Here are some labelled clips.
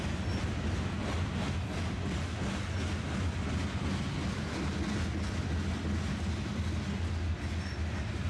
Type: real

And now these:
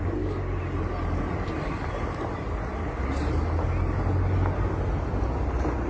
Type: real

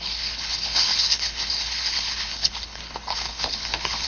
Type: fake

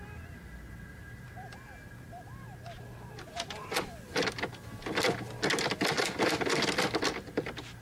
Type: real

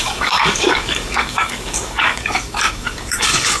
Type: fake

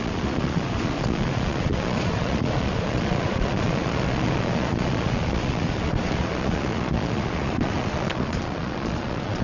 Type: fake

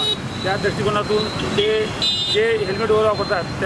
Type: real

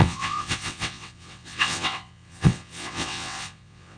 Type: fake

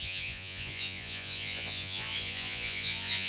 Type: fake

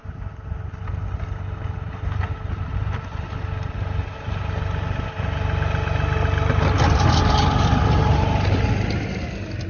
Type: real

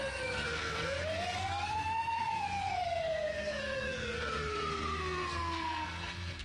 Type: fake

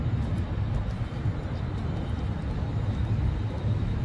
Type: real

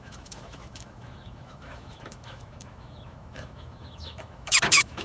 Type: fake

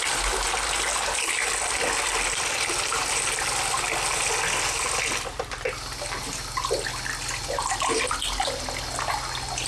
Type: real